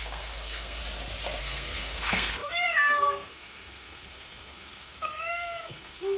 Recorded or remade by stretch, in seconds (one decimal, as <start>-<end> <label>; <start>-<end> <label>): 0.0-0.8 remade; 0.8-1.4 recorded; 1.4-6.2 remade